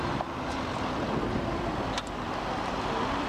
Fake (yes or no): no